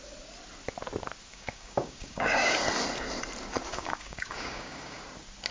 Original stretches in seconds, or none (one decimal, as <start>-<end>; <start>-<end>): 0.0-1.3; 2.6-3.7; 5.0-5.5